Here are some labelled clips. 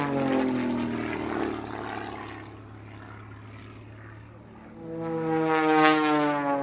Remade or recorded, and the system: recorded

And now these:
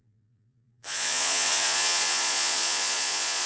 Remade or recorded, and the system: remade, vocoder, Vocos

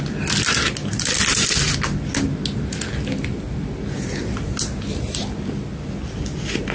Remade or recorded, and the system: recorded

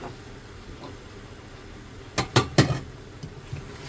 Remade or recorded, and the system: recorded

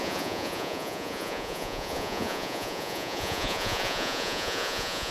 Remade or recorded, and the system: remade, vocoder, Vocos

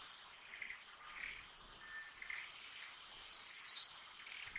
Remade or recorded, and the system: recorded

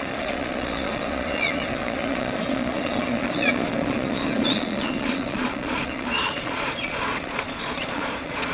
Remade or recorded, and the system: remade, vocoder, Vocos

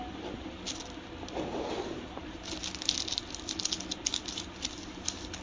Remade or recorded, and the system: recorded